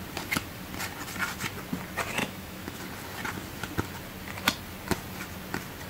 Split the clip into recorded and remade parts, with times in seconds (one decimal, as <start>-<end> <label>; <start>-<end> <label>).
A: 0.0-2.2 recorded; 2.2-2.8 remade; 2.8-5.9 recorded